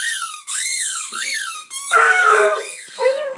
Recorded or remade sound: remade